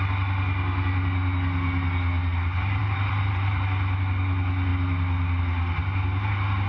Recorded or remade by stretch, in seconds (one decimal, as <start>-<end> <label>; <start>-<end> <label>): 0.0-2.8 recorded; 2.8-3.6 remade; 3.6-6.7 recorded